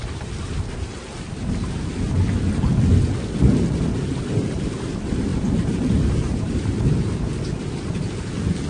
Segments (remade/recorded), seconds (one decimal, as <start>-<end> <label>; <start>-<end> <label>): 0.0-1.0 remade; 1.0-5.3 recorded; 5.3-6.5 remade; 6.5-8.7 recorded